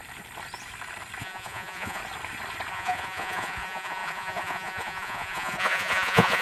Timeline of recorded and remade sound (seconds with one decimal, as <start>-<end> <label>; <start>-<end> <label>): 0.0-1.2 recorded; 1.2-2.0 remade; 2.0-2.7 recorded; 2.7-6.4 remade